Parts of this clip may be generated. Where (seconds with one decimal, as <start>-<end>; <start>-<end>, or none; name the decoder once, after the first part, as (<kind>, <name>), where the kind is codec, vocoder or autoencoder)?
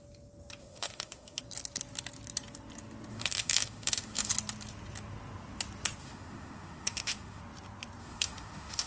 0.6-1.4 (autoencoder, DAC-VAE); 3.1-4.3; 6.0-7.4; 8.0-8.9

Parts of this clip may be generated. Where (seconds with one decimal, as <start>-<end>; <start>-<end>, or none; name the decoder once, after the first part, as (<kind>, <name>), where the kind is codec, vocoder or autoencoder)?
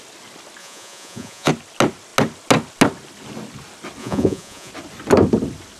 0.6-1.5 (vocoder, Vocos); 4.0-4.7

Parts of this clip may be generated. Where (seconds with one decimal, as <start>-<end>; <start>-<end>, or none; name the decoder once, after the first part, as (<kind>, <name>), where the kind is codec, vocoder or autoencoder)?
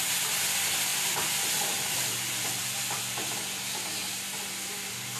0.9-3.4 (vocoder, BigVGAN v2)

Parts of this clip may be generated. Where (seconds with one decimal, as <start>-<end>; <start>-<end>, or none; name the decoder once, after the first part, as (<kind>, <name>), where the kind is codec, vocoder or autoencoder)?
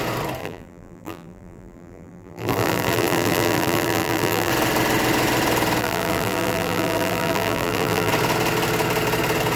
0.4-4.5 (vocoder, BigVGAN v2); 5.8-8.1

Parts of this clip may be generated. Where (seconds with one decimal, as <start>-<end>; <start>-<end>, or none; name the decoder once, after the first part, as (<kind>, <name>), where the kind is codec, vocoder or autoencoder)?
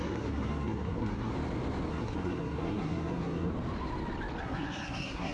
0.0-1.3 (codec, SNAC); 1.9-3.5; 4.4-5.3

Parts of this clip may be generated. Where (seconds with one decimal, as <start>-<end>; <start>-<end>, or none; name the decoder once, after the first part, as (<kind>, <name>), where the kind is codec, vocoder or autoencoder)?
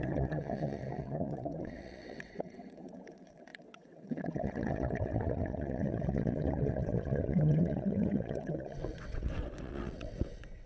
0.0-10.7 (vocoder, WaveNeXt)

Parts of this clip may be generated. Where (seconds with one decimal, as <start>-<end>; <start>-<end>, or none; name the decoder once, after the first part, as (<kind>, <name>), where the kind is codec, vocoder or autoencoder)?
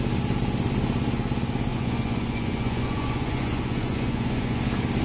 1.7-4.6 (vocoder, Vocos)